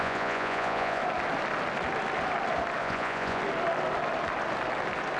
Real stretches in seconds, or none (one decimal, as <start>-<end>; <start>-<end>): 1.0-2.8; 3.4-5.2

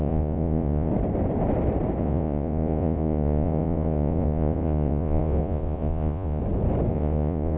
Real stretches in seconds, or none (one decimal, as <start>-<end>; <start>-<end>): 0.9-2.0; 6.4-6.9

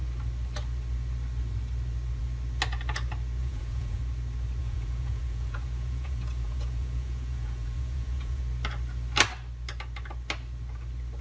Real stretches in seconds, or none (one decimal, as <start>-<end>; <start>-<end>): 0.0-3.4; 4.0-4.6; 8.4-11.2

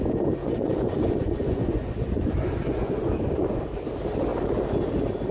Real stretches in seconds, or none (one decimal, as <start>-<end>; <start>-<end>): 0.0-0.4; 3.6-5.3

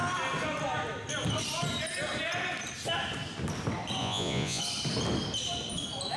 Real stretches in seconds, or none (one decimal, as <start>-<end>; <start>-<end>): 0.0-4.0; 4.6-6.2

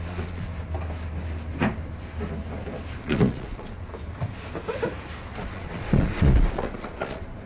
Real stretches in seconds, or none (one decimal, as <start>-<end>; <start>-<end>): 0.5-3.0; 3.9-5.3

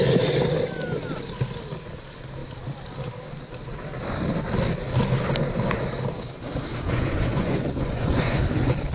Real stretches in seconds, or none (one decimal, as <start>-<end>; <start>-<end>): 0.0-6.7; 8.4-8.9